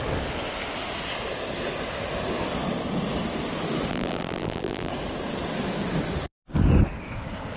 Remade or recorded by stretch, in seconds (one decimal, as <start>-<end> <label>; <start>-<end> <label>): 0.0-3.9 recorded; 3.9-4.9 remade; 4.9-7.6 recorded